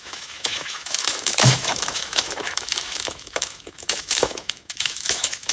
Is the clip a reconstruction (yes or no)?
yes